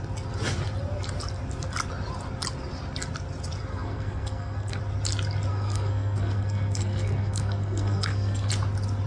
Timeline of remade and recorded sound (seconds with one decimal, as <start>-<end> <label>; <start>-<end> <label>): 0.0-3.7 recorded; 3.7-4.8 remade; 4.8-5.5 recorded; 5.5-8.5 remade; 8.5-9.1 recorded